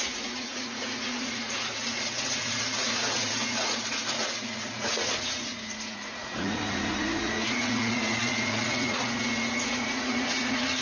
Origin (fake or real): fake